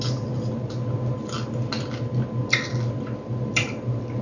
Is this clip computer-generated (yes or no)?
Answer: no